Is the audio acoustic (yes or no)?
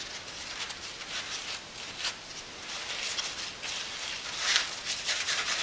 yes